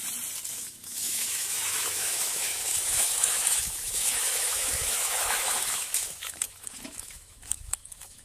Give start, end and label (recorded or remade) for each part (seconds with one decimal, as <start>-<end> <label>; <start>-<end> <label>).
0.0-0.5 recorded; 0.5-8.2 remade